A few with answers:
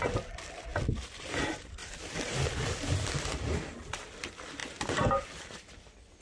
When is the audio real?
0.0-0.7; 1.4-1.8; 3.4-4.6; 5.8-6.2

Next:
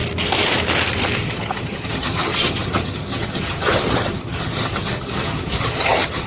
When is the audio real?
0.0-1.2

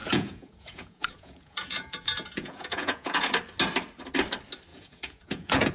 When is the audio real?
3.3-4.7